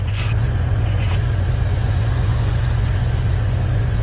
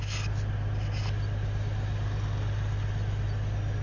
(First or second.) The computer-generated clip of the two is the first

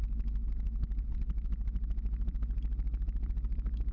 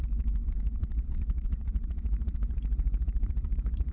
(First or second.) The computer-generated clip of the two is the second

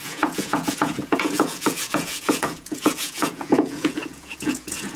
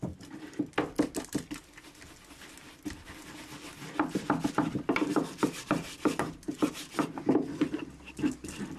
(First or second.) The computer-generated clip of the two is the first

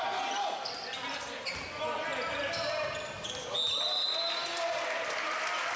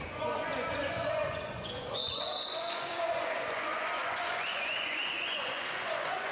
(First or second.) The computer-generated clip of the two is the second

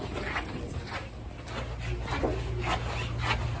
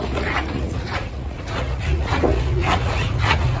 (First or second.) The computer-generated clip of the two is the second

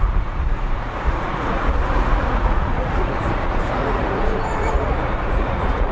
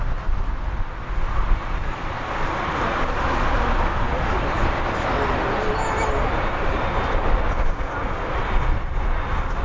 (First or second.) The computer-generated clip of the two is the first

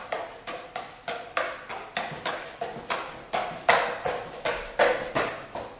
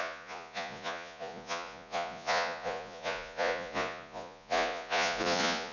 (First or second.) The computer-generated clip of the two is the second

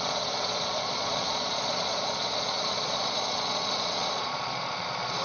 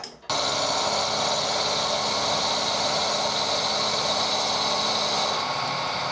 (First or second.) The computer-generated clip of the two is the first